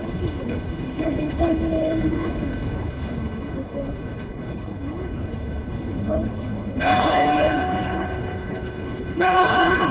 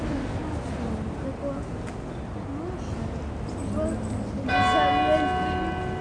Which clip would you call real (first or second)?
second